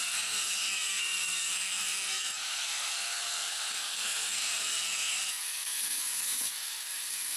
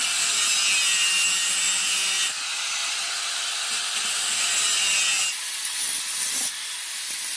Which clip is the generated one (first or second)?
first